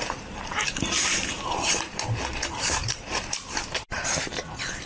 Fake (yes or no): yes